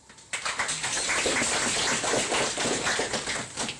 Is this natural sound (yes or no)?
yes